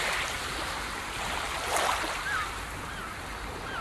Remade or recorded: recorded